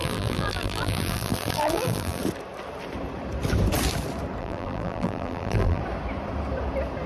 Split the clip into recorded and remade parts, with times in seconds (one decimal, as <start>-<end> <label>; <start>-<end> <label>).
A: 0.0-2.2 remade; 2.2-4.4 recorded; 4.4-5.8 remade; 5.8-7.1 recorded